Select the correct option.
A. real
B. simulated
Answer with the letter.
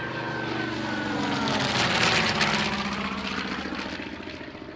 A